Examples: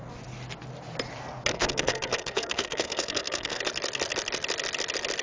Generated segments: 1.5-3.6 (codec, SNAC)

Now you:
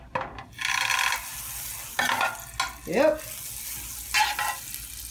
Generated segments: none

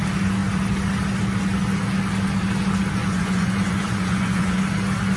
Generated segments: 3.0-4.6 (vocoder, Vocos)

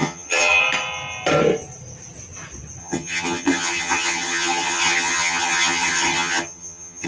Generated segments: 0.0-0.6 (vocoder, HiFi-GAN); 2.8-7.1